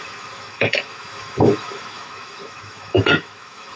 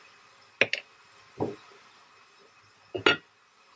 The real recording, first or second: second